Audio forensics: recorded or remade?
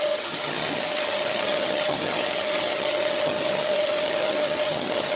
remade